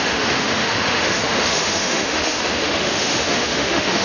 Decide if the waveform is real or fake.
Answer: fake